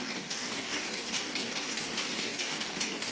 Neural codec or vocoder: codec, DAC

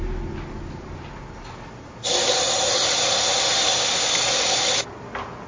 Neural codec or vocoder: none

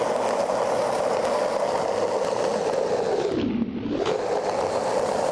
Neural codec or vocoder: none